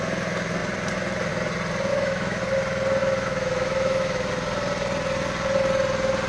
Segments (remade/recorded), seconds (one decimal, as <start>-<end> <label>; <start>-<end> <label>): 0.0-1.9 recorded; 1.9-2.4 remade; 2.4-3.0 recorded; 3.0-4.3 remade; 4.3-6.3 recorded